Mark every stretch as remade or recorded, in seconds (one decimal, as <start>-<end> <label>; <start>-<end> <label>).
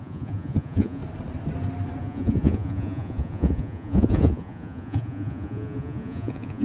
0.0-1.0 remade; 1.0-2.0 recorded; 2.0-6.6 remade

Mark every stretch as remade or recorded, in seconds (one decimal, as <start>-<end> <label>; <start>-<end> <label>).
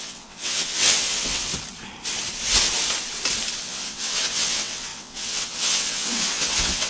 0.0-1.5 remade; 1.5-3.6 recorded; 3.6-6.9 remade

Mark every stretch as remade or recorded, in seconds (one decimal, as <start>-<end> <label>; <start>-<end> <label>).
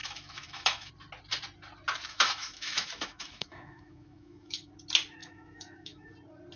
0.0-0.9 remade; 0.9-2.1 recorded; 2.1-4.7 remade; 4.7-5.2 recorded; 5.2-6.1 remade; 6.1-6.6 recorded